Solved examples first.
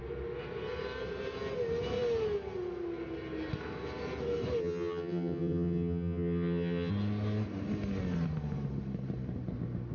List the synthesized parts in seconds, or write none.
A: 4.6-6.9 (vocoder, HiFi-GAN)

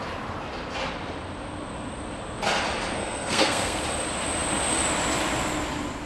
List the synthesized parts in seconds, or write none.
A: 3.0-3.8 (codec, SNAC)

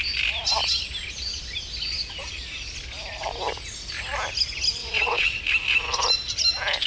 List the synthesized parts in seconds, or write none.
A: 4.8-5.4 (vocoder, WaveNeXt)